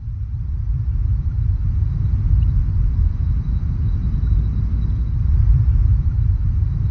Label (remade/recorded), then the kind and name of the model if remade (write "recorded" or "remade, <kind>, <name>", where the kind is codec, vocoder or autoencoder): recorded